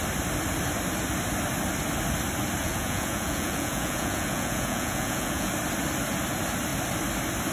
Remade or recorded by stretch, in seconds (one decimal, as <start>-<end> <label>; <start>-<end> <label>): 0.0-2.6 recorded; 2.6-5.5 remade; 5.5-7.5 recorded